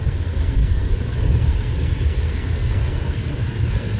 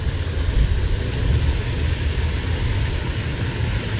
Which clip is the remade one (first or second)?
first